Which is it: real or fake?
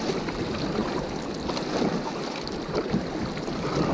real